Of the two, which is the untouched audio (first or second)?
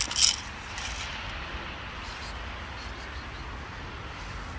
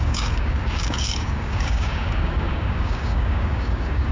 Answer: first